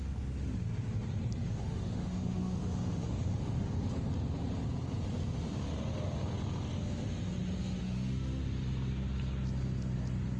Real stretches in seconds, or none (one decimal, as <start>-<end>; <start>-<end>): 0.0-1.4; 3.9-7.8; 8.4-10.4